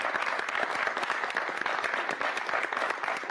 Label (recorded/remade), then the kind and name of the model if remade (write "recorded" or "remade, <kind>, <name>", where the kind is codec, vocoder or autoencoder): recorded